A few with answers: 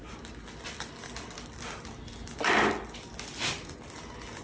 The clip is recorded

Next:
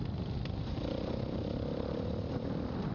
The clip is recorded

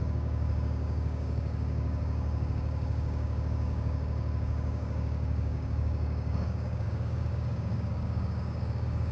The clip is remade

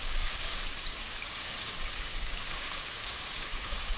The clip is remade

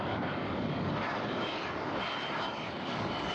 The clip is remade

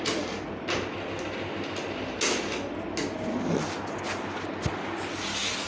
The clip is recorded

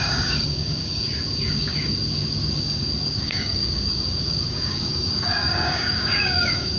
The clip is remade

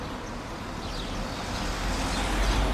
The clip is recorded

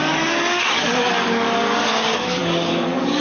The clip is remade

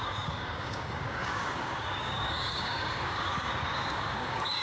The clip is remade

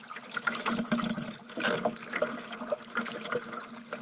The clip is recorded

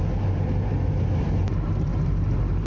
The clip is recorded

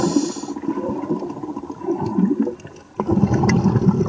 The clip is recorded